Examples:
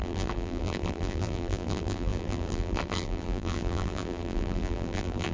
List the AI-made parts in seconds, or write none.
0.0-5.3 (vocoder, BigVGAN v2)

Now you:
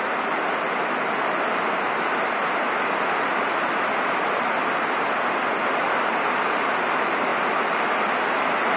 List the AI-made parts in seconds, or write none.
none

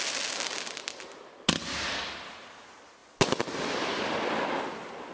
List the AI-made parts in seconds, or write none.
none

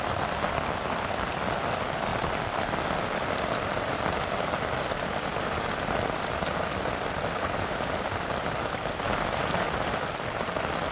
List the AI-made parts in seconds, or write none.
6.6-7.1 (vocoder, BigVGAN v2)